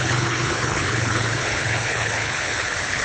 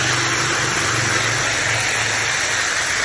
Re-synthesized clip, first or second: first